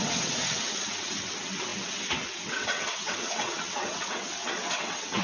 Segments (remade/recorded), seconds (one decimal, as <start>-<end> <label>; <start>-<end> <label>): 0.0-5.2 remade